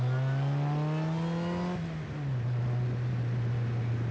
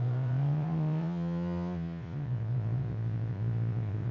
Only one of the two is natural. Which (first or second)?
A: first